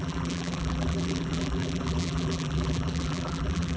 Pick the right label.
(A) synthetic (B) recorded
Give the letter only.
A